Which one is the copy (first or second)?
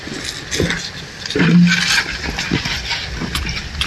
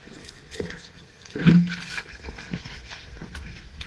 second